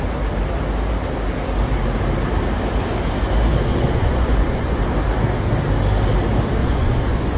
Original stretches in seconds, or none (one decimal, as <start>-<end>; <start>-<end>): 0.0-3.7; 4.8-6.6